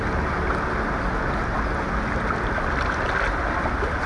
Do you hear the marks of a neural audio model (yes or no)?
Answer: no